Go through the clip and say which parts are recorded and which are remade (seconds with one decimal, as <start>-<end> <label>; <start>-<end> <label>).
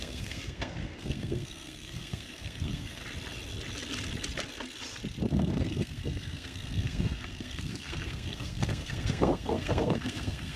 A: 0.0-3.0 remade; 3.0-5.3 recorded; 5.3-10.6 remade